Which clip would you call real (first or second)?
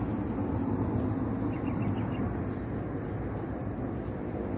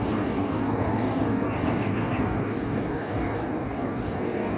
first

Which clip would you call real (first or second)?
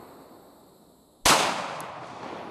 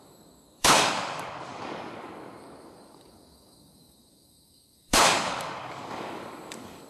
first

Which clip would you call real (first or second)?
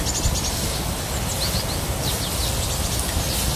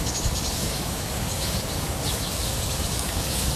first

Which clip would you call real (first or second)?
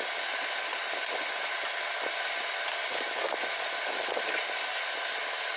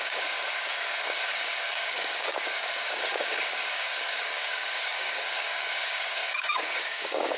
first